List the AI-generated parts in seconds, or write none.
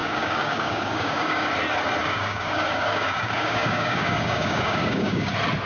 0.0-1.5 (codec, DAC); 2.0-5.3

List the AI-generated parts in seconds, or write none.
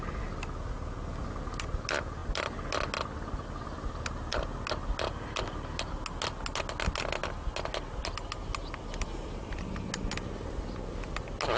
none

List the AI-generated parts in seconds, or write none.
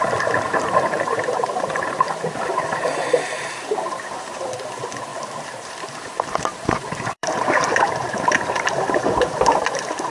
0.0-10.1 (vocoder, BigVGAN v2)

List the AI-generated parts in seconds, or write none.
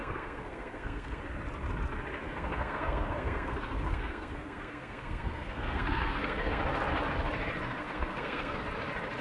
0.0-1.2 (codec, SNAC); 2.2-6.6; 7.8-8.6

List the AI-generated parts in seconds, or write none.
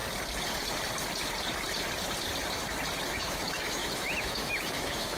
3.1-5.2 (autoencoder, DAC-VAE)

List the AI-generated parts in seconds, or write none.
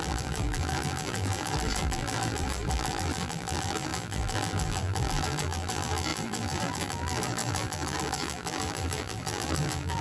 0.0-10.0 (vocoder, BigVGAN v2)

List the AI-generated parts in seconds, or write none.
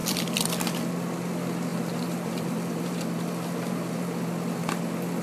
0.0-0.9 (vocoder, BigVGAN v2); 1.7-4.8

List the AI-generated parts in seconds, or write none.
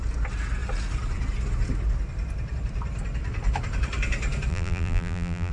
4.5-5.5 (vocoder, BigVGAN v2)